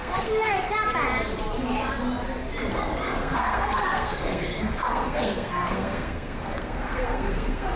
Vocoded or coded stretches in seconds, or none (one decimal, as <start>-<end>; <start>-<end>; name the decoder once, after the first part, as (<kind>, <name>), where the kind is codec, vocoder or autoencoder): 0.0-0.7 (codec, SNAC); 2.7-7.8